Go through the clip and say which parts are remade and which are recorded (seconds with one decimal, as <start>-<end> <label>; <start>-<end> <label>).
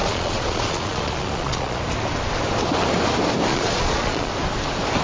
0.0-1.8 remade; 1.8-3.5 recorded; 3.5-4.3 remade; 4.3-5.0 recorded